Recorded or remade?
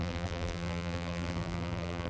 remade